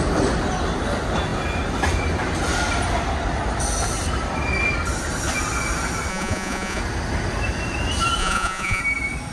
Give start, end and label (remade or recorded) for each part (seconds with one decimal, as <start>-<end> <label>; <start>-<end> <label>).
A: 0.0-6.1 recorded; 6.1-6.8 remade; 6.8-8.2 recorded; 8.2-8.8 remade; 8.8-9.3 recorded